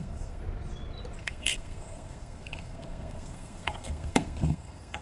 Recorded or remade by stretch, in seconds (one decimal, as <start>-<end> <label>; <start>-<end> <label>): 0.0-0.4 remade; 0.4-1.2 recorded; 1.2-5.0 remade

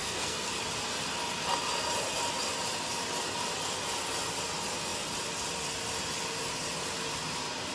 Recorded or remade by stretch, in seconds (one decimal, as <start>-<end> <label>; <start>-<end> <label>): 0.0-0.5 remade; 0.5-7.7 recorded

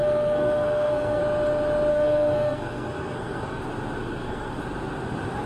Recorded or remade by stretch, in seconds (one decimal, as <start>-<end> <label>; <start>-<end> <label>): 0.0-1.2 remade; 1.2-1.9 recorded; 1.9-3.6 remade; 3.6-4.0 recorded; 4.0-4.6 remade; 4.6-5.5 recorded

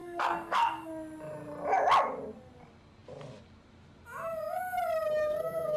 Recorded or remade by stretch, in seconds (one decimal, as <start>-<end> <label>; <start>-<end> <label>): 0.0-0.9 remade; 0.9-5.2 recorded; 5.2-5.8 remade

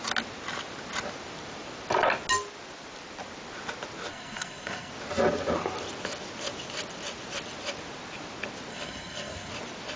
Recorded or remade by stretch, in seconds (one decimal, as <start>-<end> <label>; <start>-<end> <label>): 0.0-4.1 recorded; 4.1-4.9 remade; 4.9-8.7 recorded; 8.7-9.5 remade; 9.5-10.0 recorded

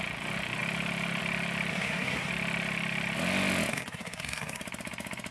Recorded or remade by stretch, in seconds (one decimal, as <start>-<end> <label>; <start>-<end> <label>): 0.0-1.7 recorded; 1.7-2.3 remade; 2.3-3.7 recorded; 3.7-4.6 remade; 4.6-5.3 recorded

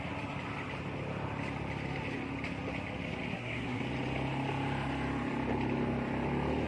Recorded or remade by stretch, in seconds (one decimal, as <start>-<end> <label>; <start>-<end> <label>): 0.0-3.3 recorded; 3.3-3.8 remade; 3.8-6.7 recorded

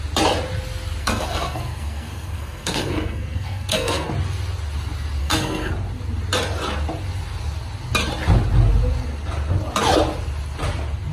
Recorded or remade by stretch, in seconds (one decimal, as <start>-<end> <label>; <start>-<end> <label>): 0.0-1.0 recorded; 1.0-4.1 remade; 4.1-5.2 recorded; 5.2-5.7 remade; 5.7-11.1 recorded